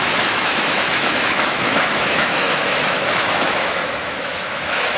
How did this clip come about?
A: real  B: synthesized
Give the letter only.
B